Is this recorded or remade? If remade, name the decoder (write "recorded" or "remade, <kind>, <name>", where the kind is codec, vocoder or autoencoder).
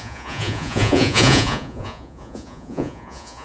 remade, vocoder, Vocos